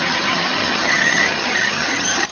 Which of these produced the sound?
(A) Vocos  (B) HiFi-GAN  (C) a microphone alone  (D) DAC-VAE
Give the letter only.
B